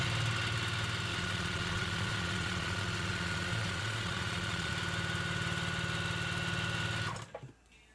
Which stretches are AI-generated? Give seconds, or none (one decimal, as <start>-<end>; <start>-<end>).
1.1-4.7